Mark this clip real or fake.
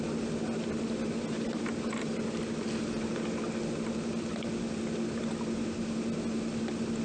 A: real